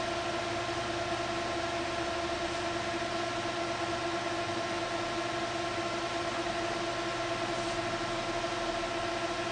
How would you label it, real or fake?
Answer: real